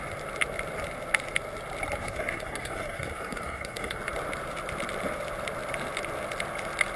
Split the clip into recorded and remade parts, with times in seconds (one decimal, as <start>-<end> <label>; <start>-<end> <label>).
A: 0.0-2.0 recorded; 2.0-4.0 remade; 4.0-7.0 recorded